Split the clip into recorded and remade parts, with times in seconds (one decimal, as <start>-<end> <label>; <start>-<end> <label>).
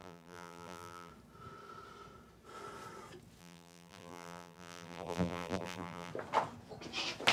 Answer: 0.0-1.1 remade; 1.1-3.4 recorded; 3.4-6.1 remade; 6.1-7.3 recorded